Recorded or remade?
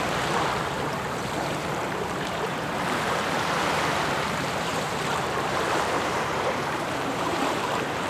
remade